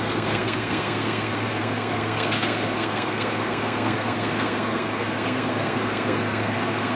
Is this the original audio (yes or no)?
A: no